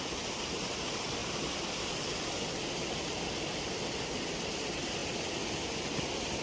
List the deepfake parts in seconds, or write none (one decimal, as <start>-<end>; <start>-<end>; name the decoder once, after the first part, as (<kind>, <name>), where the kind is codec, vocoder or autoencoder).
none

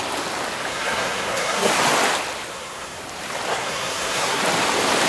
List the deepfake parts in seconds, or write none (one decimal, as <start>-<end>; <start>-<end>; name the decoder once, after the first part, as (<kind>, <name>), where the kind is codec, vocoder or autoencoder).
0.7-1.7 (codec, SNAC); 2.5-3.0; 3.5-4.4

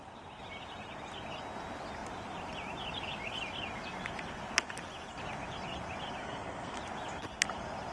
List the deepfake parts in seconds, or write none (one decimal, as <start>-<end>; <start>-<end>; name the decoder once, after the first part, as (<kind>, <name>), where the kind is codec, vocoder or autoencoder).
6.2-6.8 (codec, SNAC)

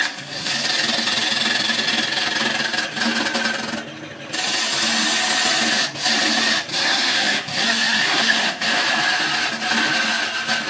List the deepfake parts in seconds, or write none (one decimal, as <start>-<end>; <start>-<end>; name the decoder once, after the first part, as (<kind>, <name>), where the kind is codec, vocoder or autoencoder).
0.0-0.5 (codec, SNAC); 6.7-8.8

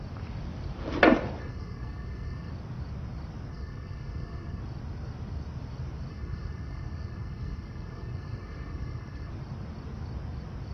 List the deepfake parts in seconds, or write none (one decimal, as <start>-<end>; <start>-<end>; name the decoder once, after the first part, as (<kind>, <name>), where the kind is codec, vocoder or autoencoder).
1.4-2.5 (codec, SNAC); 3.5-4.6; 6.1-9.3